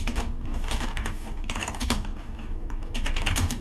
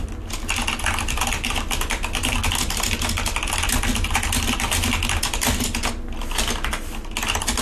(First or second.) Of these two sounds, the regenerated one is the first